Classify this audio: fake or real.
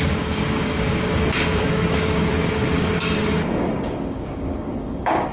fake